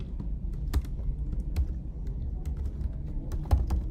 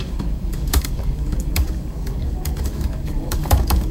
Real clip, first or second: first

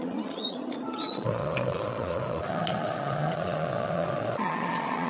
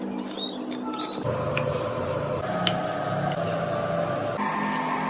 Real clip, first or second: second